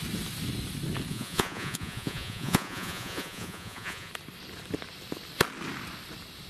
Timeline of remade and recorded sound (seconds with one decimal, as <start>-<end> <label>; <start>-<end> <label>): 0.0-1.1 recorded; 1.1-4.1 remade; 4.1-6.5 recorded